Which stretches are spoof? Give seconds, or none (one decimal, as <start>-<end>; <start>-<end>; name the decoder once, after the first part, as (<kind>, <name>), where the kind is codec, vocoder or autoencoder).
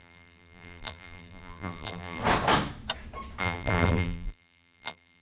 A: 0.0-2.2 (vocoder, BigVGAN v2); 3.4-5.2